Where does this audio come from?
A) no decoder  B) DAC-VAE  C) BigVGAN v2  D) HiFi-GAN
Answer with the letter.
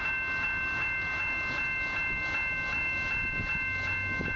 A